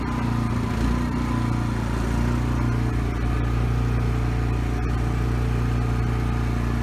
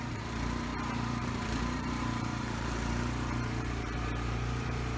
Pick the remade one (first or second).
second